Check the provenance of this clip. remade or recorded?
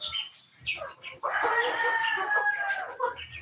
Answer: recorded